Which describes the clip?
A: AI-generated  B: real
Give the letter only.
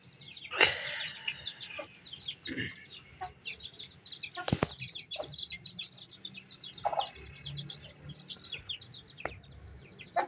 B